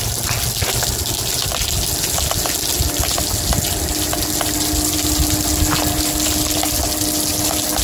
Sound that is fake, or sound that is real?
real